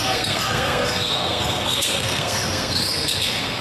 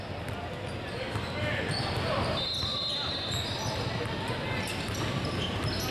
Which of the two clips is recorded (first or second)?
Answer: second